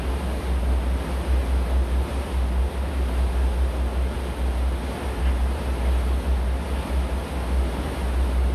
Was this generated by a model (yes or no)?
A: no